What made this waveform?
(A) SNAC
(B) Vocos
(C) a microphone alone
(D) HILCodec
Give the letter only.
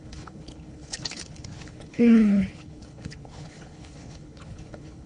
D